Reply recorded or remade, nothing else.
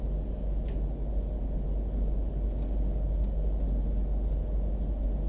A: recorded